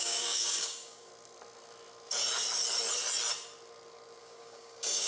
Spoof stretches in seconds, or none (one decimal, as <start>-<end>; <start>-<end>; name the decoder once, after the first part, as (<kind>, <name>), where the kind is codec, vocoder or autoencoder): 0.0-1.1 (codec, DAC); 4.2-5.1